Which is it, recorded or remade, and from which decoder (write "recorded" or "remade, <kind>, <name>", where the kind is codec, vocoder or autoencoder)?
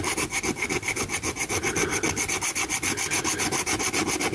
recorded